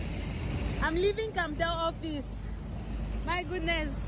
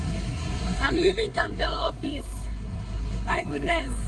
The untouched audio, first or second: first